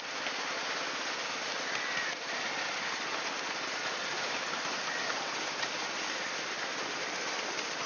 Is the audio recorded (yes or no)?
yes